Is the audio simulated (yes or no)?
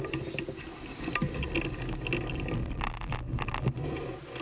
no